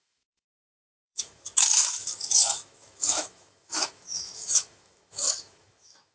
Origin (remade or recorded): remade